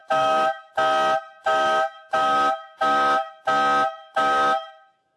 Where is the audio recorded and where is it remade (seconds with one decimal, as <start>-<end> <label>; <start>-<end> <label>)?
0.0-0.7 remade; 0.7-1.4 recorded; 1.4-3.3 remade; 3.3-4.0 recorded; 4.0-5.2 remade